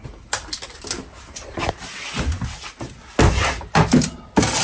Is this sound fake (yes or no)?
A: no